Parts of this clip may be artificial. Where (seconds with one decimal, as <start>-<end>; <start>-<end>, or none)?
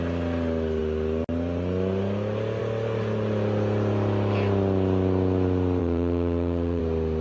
5.8-6.8